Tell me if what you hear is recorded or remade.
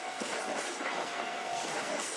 remade